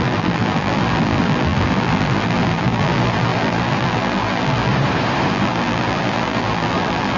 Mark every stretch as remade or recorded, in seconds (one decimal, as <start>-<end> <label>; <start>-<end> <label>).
0.0-4.7 remade; 4.7-5.3 recorded; 5.3-7.2 remade